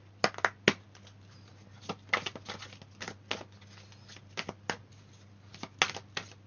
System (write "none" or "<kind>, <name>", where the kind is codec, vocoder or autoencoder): none